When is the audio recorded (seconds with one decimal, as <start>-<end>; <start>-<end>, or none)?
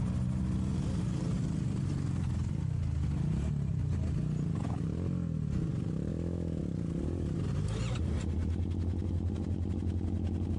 0.0-6.1; 6.6-10.6